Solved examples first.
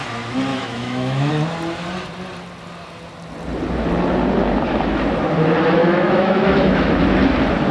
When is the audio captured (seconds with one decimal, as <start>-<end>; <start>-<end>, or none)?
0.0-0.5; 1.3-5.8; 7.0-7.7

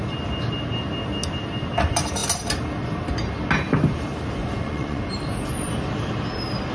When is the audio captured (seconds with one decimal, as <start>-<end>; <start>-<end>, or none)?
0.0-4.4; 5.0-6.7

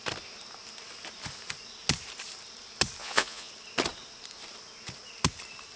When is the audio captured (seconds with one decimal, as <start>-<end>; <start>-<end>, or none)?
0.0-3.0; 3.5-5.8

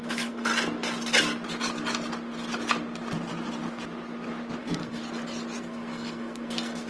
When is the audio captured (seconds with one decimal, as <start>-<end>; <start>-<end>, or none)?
0.5-4.6; 5.0-5.6

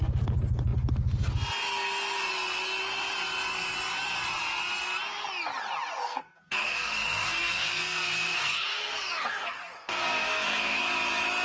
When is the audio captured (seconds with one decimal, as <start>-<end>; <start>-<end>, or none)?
0.0-6.0; 10.8-11.4